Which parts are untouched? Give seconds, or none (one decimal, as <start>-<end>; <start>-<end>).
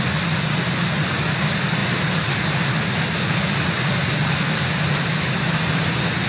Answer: 0.0-6.3